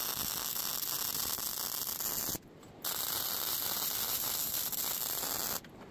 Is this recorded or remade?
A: recorded